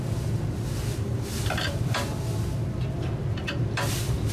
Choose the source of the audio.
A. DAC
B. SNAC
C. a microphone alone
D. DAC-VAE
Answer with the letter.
C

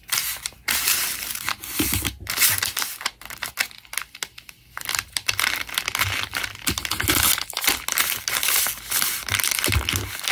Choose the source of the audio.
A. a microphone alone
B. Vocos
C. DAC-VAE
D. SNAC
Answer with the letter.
A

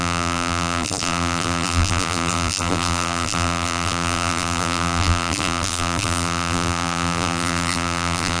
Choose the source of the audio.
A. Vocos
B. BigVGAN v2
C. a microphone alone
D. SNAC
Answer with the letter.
B